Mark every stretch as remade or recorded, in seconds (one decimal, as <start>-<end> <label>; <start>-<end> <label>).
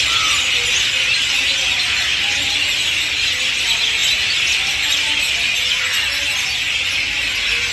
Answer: 0.0-7.7 recorded